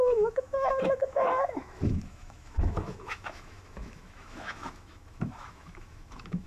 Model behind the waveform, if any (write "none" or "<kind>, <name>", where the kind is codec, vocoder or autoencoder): autoencoder, DAC-VAE